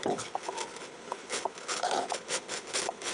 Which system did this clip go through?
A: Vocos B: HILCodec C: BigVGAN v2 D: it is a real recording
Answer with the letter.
B